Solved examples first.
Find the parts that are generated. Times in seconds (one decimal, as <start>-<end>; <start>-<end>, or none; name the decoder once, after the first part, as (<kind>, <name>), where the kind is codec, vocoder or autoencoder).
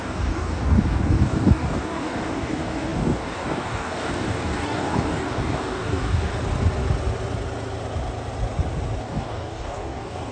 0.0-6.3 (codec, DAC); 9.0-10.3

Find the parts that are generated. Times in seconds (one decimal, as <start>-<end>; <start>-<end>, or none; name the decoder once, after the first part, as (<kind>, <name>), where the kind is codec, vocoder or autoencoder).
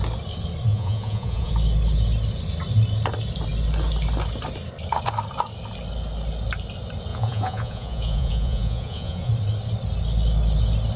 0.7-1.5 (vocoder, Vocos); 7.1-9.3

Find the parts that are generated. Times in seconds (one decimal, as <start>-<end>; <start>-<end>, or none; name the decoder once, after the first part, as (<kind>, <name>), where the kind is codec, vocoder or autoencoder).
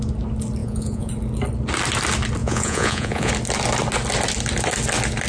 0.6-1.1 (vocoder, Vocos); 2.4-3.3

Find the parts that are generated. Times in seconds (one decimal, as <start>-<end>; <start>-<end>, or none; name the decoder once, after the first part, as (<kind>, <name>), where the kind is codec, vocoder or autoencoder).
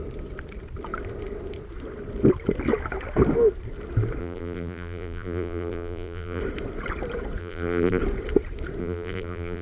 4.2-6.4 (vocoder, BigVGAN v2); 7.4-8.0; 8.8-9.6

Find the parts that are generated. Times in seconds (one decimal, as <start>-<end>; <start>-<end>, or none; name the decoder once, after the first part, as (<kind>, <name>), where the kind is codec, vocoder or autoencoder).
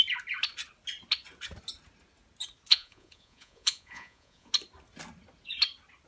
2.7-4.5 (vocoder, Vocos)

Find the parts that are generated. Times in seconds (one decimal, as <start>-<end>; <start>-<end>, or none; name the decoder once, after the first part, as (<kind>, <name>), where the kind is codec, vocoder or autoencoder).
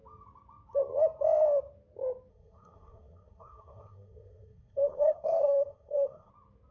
2.3-6.3 (codec, SNAC)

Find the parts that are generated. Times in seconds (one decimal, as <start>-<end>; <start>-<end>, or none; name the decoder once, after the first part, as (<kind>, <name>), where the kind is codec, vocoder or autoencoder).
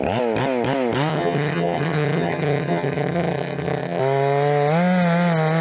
1.1-4.0 (vocoder, HiFi-GAN)